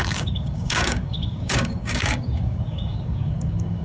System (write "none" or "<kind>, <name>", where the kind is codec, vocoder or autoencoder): codec, DAC